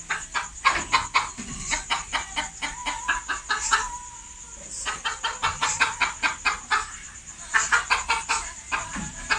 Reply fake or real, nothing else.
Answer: real